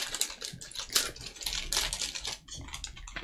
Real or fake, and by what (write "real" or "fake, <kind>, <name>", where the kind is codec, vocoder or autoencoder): real